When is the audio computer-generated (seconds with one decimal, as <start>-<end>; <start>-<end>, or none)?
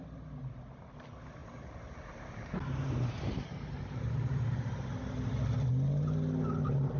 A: 1.4-4.7